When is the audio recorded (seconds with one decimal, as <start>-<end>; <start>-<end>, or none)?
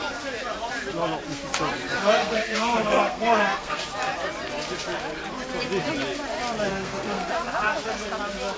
0.0-2.0; 3.8-6.7; 7.3-8.6